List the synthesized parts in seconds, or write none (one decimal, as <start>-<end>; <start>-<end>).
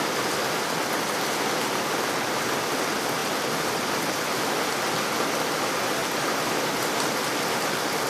none